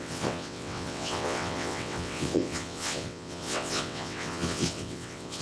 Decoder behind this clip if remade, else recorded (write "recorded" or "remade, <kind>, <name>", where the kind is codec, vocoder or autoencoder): remade, vocoder, WaveNeXt